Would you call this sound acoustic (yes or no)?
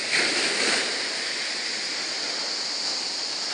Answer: yes